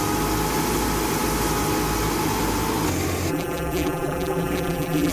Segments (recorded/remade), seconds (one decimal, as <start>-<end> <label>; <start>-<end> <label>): 0.0-3.3 recorded; 3.3-5.1 remade